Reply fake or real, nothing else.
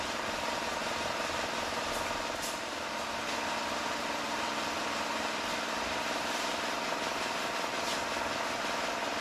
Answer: real